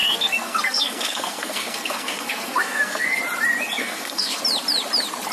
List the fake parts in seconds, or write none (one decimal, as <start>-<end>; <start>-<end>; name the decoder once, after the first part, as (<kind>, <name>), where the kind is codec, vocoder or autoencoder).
0.0-3.2 (codec, SNAC); 3.8-4.4